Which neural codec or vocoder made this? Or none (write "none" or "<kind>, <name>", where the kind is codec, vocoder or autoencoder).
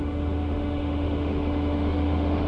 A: autoencoder, DAC-VAE